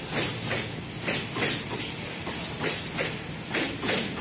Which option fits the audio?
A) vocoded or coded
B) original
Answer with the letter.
B